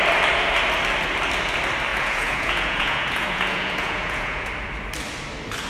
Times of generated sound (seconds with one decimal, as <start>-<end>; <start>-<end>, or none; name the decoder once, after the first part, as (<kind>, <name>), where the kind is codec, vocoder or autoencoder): 1.9-4.5 (vocoder, Vocos)